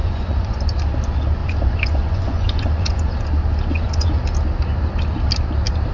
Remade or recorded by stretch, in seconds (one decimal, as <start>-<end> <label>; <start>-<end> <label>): 0.0-0.6 remade; 0.6-1.4 recorded; 1.4-3.1 remade; 3.1-3.7 recorded; 3.7-4.2 remade; 4.2-5.9 recorded